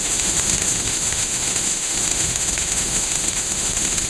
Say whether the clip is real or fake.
fake